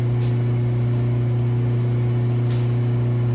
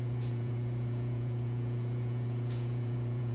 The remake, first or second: second